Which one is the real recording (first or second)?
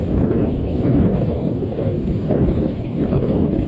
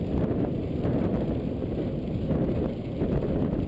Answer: second